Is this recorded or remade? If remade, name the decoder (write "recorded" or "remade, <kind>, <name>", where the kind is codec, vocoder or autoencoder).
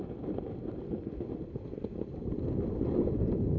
recorded